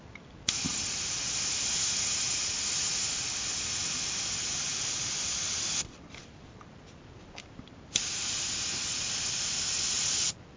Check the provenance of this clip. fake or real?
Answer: real